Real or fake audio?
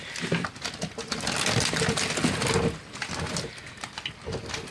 real